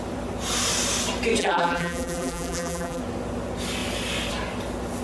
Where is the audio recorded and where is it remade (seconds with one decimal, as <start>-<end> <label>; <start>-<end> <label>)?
0.0-1.4 recorded; 1.4-3.0 remade; 3.0-5.0 recorded